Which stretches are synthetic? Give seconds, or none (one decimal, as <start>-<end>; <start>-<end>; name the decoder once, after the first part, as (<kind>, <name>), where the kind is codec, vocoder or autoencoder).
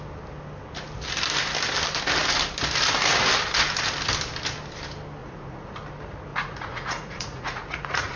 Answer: 5.2-5.8 (vocoder, Vocos); 6.3-8.2